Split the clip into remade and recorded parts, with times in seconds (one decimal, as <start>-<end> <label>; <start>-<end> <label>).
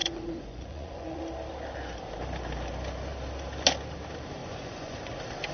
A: 0.0-1.2 remade; 1.2-4.4 recorded; 4.4-5.1 remade; 5.1-5.5 recorded